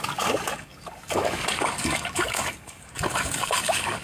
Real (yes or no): no